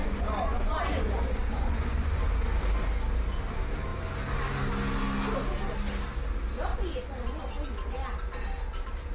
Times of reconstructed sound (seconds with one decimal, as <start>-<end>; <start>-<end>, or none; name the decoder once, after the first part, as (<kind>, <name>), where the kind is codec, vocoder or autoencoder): 0.0-2.2 (vocoder, Vocos); 6.7-7.4